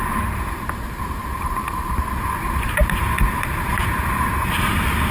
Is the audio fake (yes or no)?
yes